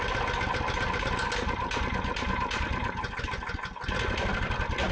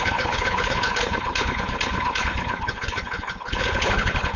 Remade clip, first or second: second